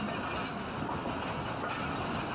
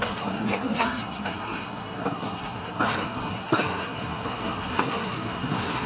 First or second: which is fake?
second